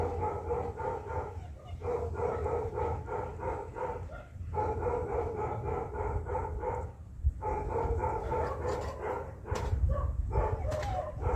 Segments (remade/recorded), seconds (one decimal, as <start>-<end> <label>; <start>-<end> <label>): 0.0-11.4 remade